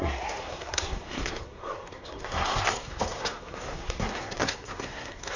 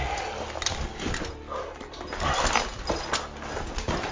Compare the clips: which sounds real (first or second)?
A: second